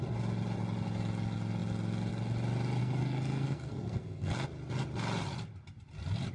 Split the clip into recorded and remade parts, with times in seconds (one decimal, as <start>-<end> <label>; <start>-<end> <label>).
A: 0.0-2.8 recorded; 2.8-4.3 remade; 4.3-6.3 recorded

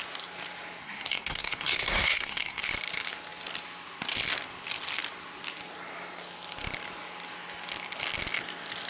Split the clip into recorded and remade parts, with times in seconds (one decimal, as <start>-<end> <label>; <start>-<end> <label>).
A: 0.0-0.8 recorded; 0.8-2.6 remade; 2.6-8.9 recorded

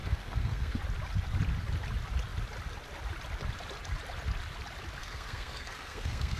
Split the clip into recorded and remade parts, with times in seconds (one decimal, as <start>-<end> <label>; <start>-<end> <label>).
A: 0.0-0.8 remade; 0.8-5.0 recorded; 5.0-6.4 remade

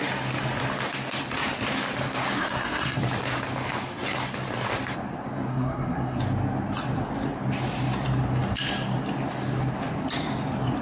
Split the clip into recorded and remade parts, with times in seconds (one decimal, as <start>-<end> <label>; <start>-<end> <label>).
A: 0.0-2.4 recorded; 2.4-3.0 remade; 3.0-5.5 recorded; 5.5-6.2 remade; 6.2-10.8 recorded

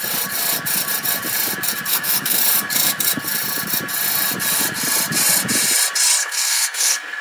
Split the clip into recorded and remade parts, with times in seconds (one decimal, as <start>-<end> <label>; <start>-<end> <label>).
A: 0.0-1.9 recorded; 1.9-2.4 remade; 2.4-6.2 recorded; 6.2-7.2 remade

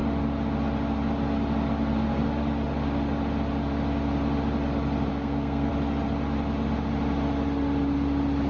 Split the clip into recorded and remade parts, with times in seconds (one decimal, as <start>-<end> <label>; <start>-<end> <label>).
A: 0.0-5.1 recorded; 5.1-5.7 remade; 5.7-8.5 recorded

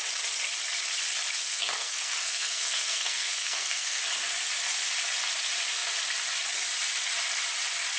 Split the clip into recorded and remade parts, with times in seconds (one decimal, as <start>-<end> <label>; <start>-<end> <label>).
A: 0.0-1.5 recorded; 1.5-4.0 remade; 4.0-8.0 recorded